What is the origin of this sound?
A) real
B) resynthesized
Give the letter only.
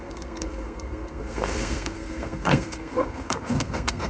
B